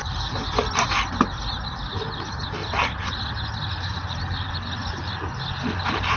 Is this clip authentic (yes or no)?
yes